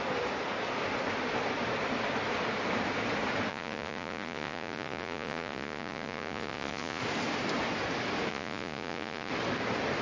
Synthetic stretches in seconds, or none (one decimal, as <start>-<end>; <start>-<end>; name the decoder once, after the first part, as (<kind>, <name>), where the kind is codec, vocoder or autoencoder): 3.5-7.0 (vocoder, Vocos); 8.3-9.3